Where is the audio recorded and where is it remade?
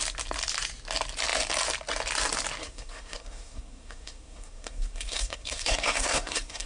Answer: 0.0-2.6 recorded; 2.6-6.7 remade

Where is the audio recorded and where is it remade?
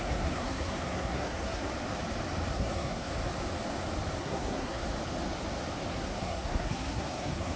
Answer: 0.0-1.7 remade; 1.7-2.5 recorded; 2.5-3.1 remade; 3.1-4.2 recorded; 4.2-4.8 remade; 4.8-5.9 recorded; 5.9-7.6 remade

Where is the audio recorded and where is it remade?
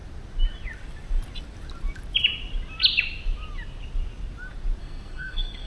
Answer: 0.0-4.8 recorded; 4.8-5.7 remade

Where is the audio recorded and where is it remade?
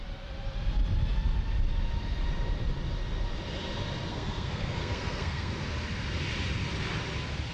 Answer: 0.0-4.1 recorded; 4.1-5.5 remade; 5.5-7.5 recorded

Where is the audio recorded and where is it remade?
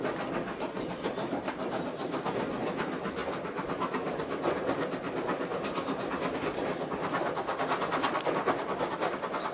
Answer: 0.0-9.5 recorded